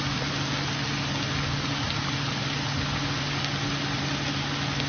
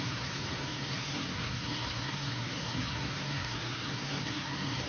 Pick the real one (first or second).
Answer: first